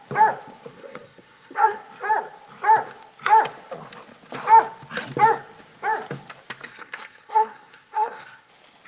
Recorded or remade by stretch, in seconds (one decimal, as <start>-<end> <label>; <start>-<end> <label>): 0.0-0.7 recorded; 0.7-1.8 remade; 1.8-6.7 recorded; 6.7-8.5 remade; 8.5-8.9 recorded